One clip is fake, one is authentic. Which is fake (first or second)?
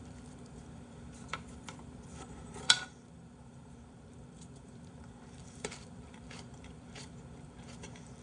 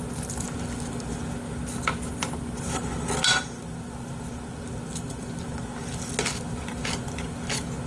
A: first